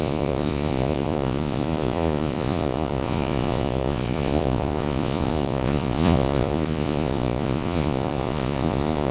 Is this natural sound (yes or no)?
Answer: no